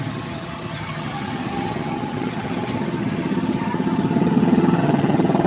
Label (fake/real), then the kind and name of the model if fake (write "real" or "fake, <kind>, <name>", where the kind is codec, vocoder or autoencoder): fake, vocoder, HiFi-GAN